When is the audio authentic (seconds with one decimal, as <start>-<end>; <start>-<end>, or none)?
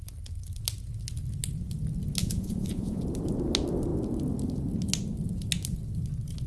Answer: 0.0-2.2; 3.0-6.5